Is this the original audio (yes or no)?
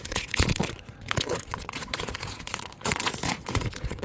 no